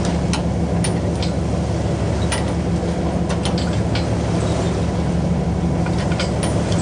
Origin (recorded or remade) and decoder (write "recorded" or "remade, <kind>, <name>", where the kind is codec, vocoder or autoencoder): recorded